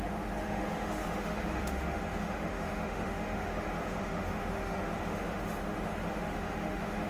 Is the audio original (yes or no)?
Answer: no